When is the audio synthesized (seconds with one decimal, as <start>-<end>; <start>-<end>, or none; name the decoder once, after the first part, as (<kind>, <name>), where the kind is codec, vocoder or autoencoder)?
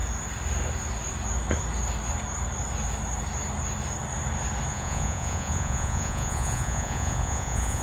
4.7-7.8 (vocoder, Vocos)